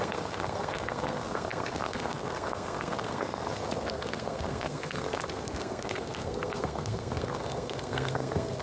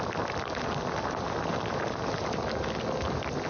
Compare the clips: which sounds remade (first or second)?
first